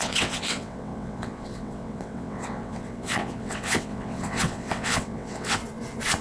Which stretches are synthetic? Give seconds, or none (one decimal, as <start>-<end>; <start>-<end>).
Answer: 0.0-5.6